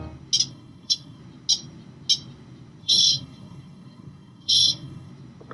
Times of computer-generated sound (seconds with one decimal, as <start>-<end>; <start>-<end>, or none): 0.5-1.2; 2.8-5.1